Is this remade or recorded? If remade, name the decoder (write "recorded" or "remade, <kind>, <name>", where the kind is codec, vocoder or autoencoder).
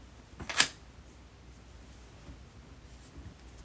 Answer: recorded